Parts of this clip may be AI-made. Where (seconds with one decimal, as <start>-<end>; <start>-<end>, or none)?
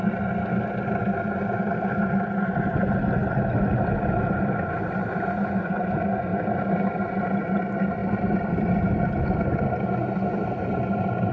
6.3-6.9; 8.0-8.9